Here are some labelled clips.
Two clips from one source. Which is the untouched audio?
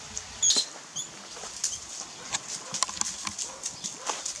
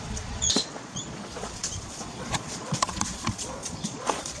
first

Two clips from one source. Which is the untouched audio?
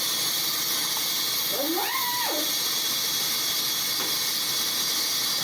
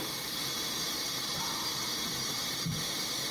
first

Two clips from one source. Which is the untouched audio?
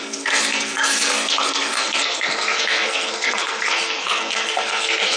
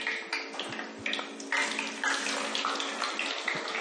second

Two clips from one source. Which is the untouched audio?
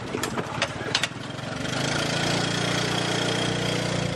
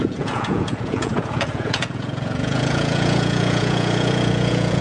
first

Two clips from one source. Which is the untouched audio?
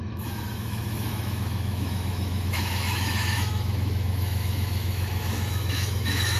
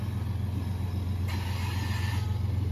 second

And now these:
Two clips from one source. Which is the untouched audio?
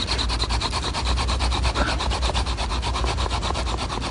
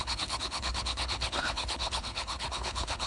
first